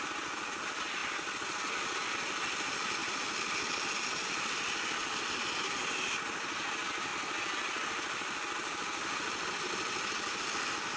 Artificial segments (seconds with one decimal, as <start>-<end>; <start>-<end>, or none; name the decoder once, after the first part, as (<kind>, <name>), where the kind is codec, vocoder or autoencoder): 1.0-1.7 (vocoder, BigVGAN v2); 7.1-10.4